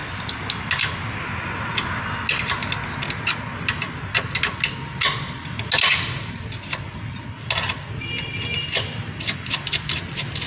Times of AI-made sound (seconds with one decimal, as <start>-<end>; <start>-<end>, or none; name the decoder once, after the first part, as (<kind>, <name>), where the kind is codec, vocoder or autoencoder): none